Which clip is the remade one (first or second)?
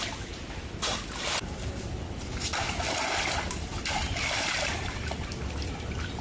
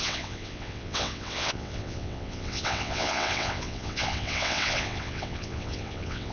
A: second